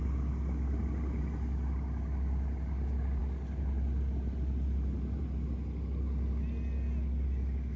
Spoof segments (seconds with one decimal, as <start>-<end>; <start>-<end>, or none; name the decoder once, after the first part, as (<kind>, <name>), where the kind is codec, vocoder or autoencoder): none